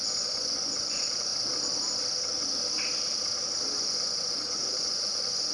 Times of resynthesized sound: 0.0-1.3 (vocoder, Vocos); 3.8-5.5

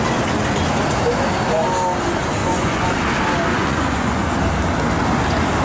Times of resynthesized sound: 2.4-2.9 (vocoder, Vocos); 3.5-4.4